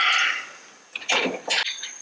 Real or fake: real